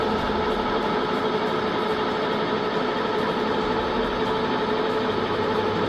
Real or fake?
real